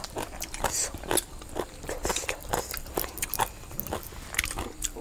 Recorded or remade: recorded